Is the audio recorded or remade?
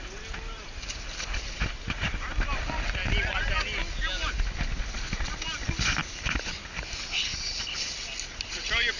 recorded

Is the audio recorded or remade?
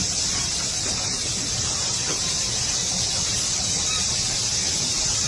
recorded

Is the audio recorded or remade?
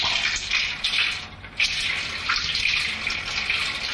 recorded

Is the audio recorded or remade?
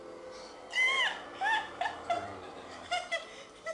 recorded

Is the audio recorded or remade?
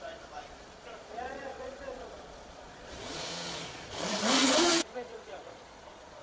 remade